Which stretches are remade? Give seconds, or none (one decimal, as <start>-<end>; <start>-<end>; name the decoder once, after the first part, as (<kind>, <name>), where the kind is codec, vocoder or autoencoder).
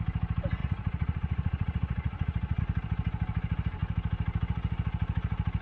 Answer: 0.6-2.6 (vocoder, Vocos)